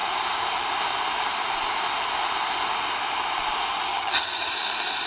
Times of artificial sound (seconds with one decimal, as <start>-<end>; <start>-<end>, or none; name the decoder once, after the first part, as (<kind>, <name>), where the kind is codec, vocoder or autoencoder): 3.9-4.5 (vocoder, HiFi-GAN)